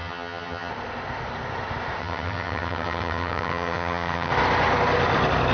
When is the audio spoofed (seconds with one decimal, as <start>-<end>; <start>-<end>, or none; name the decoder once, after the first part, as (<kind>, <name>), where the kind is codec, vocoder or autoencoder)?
0.0-0.7 (vocoder, HiFi-GAN); 2.0-4.3